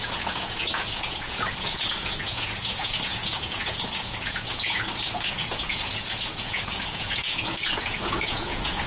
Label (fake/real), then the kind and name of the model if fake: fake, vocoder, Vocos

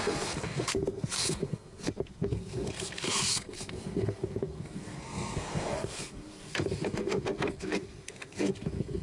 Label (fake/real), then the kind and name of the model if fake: fake, codec, SNAC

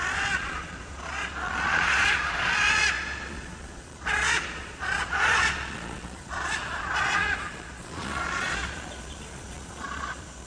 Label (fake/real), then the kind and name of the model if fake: fake, vocoder, Vocos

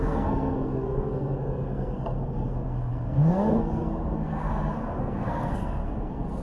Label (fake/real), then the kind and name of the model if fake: fake, codec, SNAC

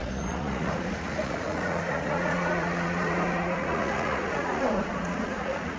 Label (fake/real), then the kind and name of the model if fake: fake, vocoder, Vocos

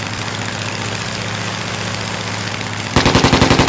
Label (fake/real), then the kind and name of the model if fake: real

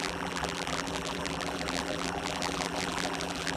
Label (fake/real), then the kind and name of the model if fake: fake, vocoder, BigVGAN v2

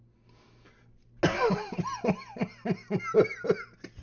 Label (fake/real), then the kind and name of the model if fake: real